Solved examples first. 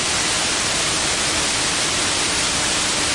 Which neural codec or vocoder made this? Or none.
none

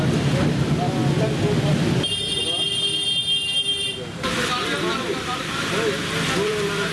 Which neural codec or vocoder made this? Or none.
none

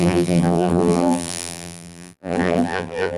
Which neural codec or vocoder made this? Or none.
vocoder, BigVGAN v2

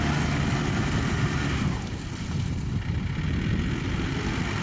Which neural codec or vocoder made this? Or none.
none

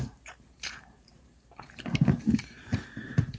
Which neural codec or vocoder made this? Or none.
vocoder, BigVGAN v2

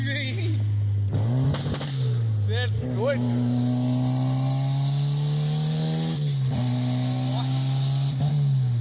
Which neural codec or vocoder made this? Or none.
none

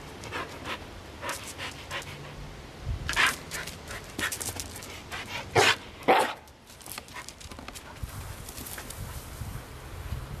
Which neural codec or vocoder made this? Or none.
none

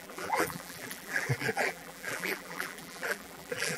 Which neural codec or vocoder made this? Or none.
vocoder, BigVGAN v2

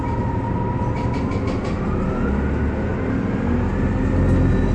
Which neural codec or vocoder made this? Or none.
none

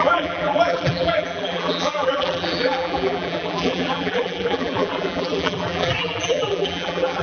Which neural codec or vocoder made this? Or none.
vocoder, BigVGAN v2